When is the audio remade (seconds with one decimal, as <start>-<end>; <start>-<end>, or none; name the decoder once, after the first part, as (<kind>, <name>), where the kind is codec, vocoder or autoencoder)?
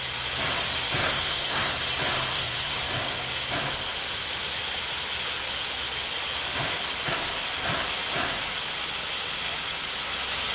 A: 1.0-1.7 (codec, SNAC); 2.3-2.8